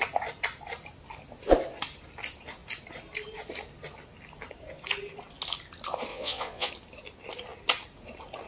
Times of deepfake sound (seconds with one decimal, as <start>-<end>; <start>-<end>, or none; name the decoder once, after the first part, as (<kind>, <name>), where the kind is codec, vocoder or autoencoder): 6.1-6.7 (vocoder, Vocos)